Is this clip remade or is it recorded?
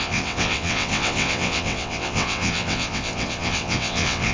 remade